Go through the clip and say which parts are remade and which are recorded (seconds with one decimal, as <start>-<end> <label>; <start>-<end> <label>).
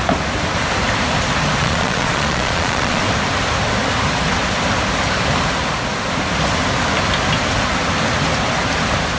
0.0-1.6 recorded; 1.6-3.0 remade; 3.0-9.2 recorded